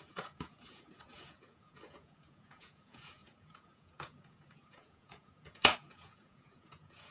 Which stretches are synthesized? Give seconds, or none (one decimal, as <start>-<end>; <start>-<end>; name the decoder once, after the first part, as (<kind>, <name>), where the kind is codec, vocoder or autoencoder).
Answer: 0.0-7.1 (vocoder, Vocos)